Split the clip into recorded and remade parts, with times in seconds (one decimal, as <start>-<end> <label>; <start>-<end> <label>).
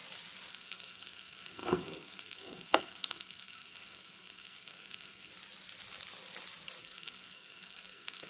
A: 0.0-0.5 recorded; 0.5-5.3 remade; 5.3-6.8 recorded; 6.8-8.3 remade